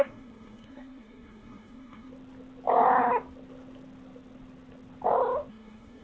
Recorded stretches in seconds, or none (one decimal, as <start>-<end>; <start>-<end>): 2.1-5.5